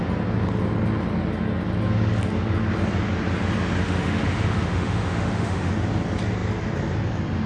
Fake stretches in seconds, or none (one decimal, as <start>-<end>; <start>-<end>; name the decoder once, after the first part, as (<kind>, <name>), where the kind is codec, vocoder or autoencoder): 3.8-5.7 (autoencoder, DAC-VAE)